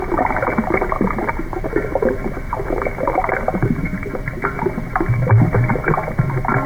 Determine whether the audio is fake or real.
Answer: real